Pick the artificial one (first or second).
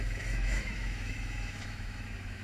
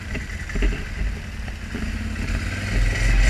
first